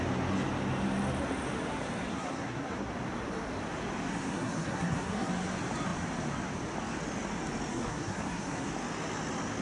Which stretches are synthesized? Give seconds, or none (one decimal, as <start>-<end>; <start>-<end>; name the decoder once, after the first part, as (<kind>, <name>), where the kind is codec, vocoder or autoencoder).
2.1-2.9 (codec, SNAC); 4.1-5.3; 7.7-8.7